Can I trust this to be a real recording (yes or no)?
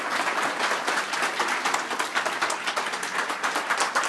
yes